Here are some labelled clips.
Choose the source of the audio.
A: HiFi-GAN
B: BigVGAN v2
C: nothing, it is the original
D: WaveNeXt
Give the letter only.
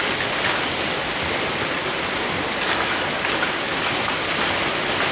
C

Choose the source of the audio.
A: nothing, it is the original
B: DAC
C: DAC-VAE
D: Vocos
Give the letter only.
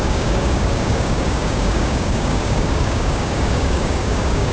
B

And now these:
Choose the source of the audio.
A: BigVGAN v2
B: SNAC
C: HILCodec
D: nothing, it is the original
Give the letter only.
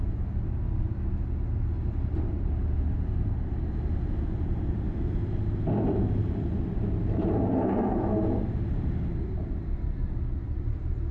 D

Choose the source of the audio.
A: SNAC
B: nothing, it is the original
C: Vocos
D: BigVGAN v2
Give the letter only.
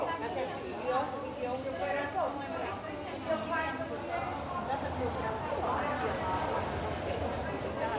B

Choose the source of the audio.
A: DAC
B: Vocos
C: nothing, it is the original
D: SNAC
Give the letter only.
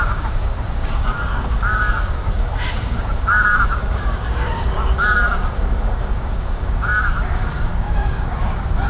A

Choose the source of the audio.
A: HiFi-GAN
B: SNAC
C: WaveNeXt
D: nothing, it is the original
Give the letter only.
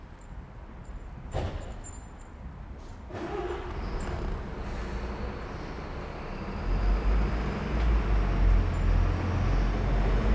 D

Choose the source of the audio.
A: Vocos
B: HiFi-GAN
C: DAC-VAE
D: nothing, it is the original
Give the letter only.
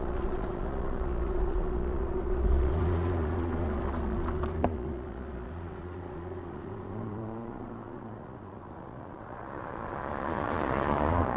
A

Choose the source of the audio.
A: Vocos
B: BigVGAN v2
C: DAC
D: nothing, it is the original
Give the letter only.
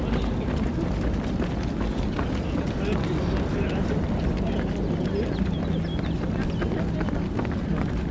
D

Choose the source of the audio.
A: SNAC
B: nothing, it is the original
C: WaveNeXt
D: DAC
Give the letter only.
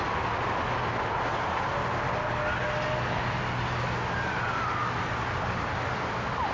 B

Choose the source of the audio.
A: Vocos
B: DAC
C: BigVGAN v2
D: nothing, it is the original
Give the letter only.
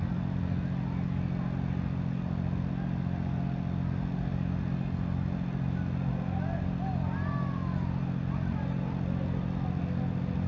D